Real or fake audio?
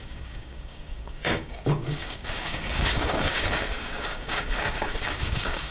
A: fake